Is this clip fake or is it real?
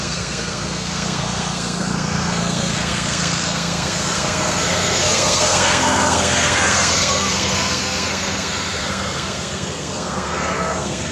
fake